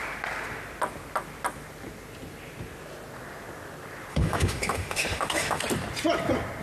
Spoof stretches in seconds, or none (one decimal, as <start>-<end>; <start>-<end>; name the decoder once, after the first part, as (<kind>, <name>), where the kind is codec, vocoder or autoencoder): 4.1-5.6 (autoencoder, DAC-VAE)